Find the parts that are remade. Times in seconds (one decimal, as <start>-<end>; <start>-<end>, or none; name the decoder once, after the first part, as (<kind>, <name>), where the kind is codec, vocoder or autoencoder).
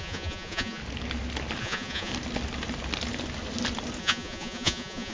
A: 0.0-0.8 (vocoder, Vocos); 1.6-2.1; 4.0-5.1